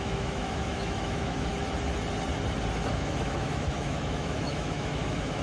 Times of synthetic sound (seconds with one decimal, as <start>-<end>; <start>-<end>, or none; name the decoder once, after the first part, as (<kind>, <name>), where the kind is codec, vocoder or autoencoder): 0.0-1.5 (autoencoder, DAC-VAE); 2.9-5.4